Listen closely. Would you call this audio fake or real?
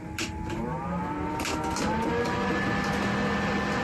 real